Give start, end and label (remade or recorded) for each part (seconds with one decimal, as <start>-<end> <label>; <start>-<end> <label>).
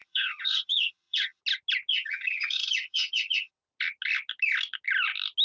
0.0-1.4 remade; 1.4-1.9 recorded; 1.9-3.5 remade; 3.5-5.4 recorded